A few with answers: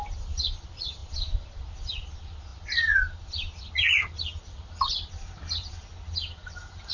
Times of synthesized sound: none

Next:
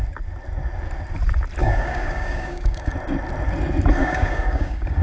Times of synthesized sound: 1.6-2.9 (codec, DAC); 4.0-5.0

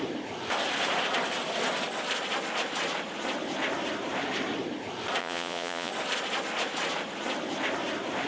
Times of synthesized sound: 5.2-5.9 (vocoder, Vocos)

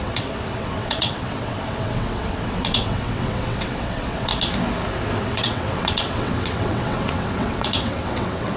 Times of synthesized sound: 0.0-4.3 (vocoder, WaveNeXt); 5.2-8.6

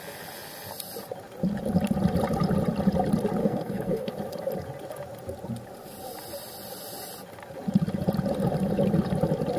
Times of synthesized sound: 3.4-4.1 (codec, SNAC)

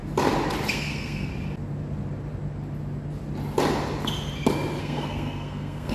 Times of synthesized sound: 0.7-1.3 (codec, SNAC); 4.8-5.9

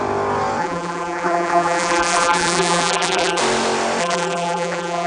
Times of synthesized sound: 0.6-3.4 (vocoder, BigVGAN v2); 4.0-5.1